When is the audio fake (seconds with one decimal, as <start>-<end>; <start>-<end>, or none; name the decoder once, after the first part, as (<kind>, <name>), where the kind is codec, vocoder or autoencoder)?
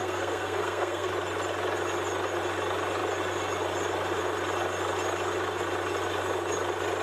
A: 0.0-1.1 (codec, SNAC)